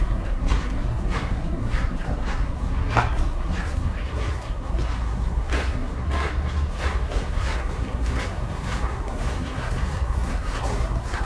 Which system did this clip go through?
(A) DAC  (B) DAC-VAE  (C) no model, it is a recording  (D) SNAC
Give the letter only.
D